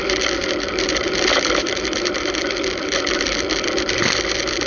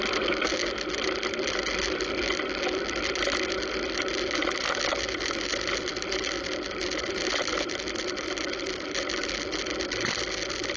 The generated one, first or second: first